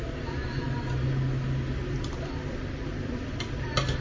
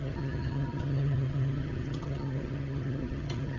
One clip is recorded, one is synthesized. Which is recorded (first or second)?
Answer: first